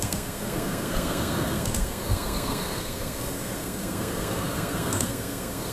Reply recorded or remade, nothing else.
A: remade